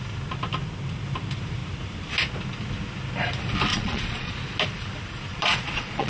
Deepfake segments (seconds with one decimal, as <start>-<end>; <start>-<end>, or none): 3.7-4.3; 5.3-6.1